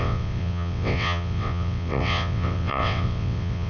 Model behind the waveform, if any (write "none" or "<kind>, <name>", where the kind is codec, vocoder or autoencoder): vocoder, WaveNeXt